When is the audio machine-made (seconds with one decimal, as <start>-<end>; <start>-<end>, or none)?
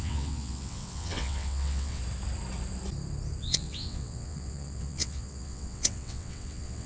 0.0-2.0; 3.4-6.9